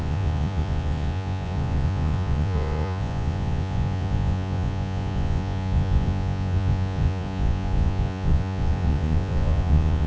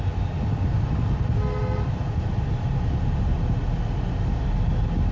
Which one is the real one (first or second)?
second